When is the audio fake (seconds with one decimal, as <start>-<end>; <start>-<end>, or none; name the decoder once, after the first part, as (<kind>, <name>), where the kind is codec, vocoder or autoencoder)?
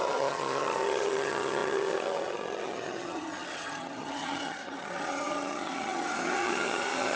0.0-7.2 (vocoder, HiFi-GAN)